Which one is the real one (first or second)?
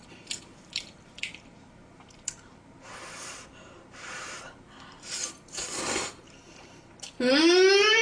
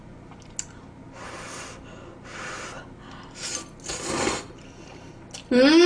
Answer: second